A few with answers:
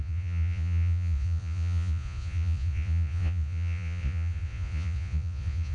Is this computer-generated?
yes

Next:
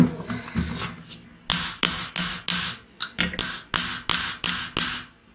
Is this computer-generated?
no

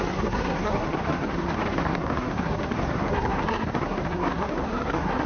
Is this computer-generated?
yes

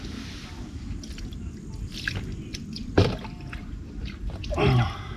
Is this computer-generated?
no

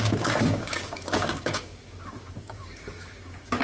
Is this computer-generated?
yes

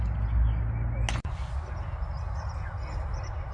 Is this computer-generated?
no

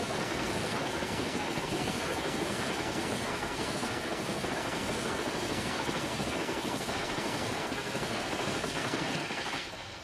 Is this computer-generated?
yes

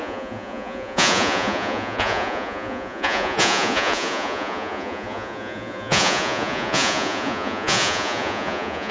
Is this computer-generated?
yes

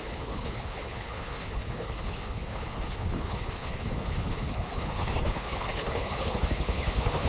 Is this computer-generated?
yes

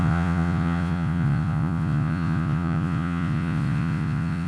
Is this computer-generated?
yes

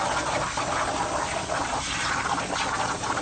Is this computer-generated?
no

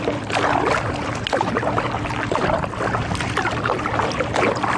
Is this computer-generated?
no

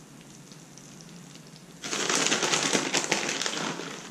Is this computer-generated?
no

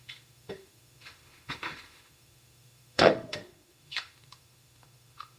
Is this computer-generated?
yes